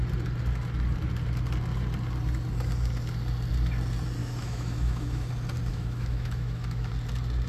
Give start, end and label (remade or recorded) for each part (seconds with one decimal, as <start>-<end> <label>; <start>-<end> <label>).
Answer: 0.0-4.2 recorded; 4.2-5.3 remade; 5.3-5.7 recorded; 5.7-6.9 remade; 6.9-7.5 recorded